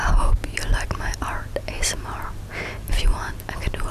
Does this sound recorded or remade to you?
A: recorded